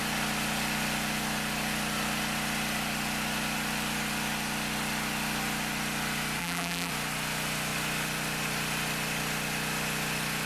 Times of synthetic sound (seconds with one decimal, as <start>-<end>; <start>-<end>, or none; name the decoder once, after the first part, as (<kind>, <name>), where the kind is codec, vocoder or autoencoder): 6.4-6.9 (vocoder, BigVGAN v2)